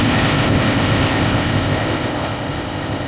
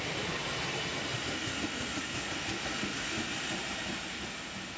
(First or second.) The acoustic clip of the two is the second